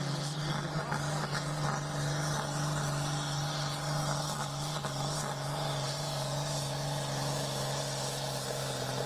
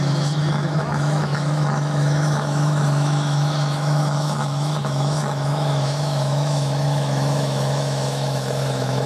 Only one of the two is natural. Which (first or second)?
first